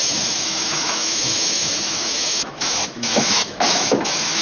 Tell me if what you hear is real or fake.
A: fake